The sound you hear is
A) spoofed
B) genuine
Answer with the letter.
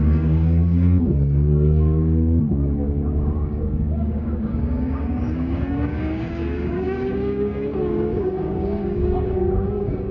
A